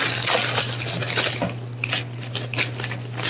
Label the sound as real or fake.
real